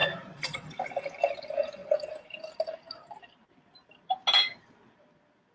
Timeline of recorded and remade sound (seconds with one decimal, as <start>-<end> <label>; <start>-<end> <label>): 0.0-0.8 remade; 0.8-1.8 recorded; 1.8-4.0 remade; 4.0-5.5 recorded